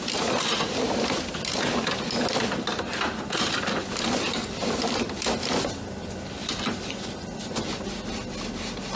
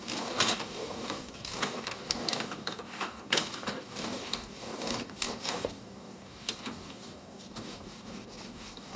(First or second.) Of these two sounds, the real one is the first